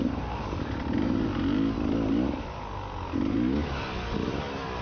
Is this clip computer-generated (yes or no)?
no